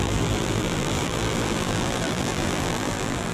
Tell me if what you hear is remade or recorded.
remade